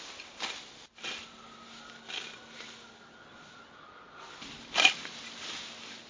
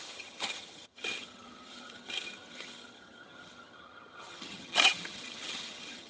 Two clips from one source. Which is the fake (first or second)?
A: second